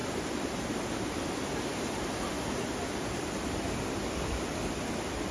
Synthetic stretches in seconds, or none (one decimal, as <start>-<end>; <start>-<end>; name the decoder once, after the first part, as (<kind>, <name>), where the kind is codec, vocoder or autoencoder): none